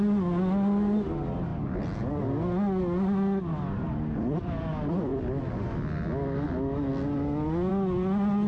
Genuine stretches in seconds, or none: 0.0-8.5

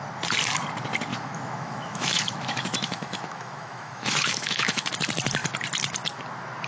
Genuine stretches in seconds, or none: 0.0-1.1; 4.9-6.7

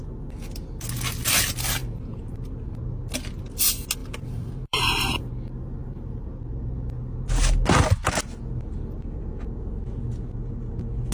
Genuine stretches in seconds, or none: 0.0-1.8; 2.8-4.0; 5.1-5.8; 6.3-11.1

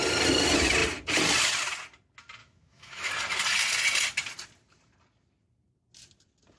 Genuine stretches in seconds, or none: 0.0-2.4; 3.1-6.6